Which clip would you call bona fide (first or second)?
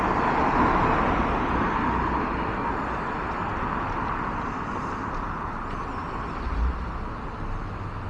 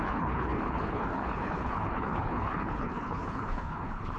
first